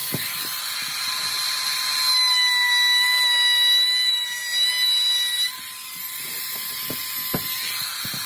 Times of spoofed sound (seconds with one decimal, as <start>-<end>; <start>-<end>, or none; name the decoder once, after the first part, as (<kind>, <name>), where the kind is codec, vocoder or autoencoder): none